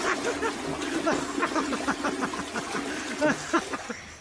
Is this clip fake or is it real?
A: real